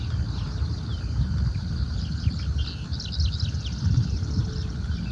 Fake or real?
real